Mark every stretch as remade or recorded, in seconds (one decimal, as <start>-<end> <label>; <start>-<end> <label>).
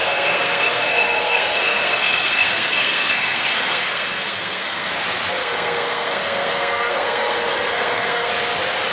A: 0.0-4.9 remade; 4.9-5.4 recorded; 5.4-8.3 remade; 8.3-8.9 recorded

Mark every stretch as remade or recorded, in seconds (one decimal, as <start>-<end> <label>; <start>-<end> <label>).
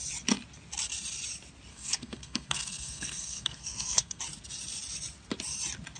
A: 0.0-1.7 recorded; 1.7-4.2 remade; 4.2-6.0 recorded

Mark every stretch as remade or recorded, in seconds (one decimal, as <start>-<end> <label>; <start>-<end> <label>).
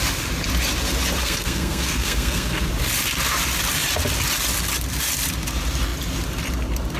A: 0.0-1.2 recorded; 1.2-2.7 remade; 2.7-7.0 recorded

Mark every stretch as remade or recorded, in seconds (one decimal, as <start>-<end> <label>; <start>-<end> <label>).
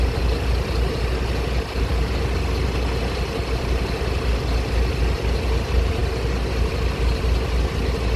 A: 0.0-8.2 recorded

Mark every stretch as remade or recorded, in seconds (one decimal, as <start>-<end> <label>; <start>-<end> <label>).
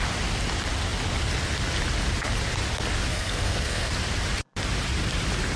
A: 0.0-3.1 recorded; 3.1-3.9 remade; 3.9-5.6 recorded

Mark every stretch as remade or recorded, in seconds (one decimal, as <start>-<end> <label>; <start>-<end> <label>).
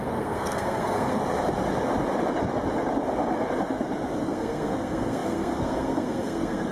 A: 0.0-1.2 remade; 1.2-4.2 recorded; 4.2-6.7 remade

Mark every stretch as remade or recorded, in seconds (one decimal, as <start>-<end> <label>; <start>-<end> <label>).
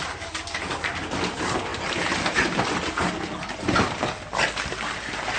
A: 0.0-5.4 recorded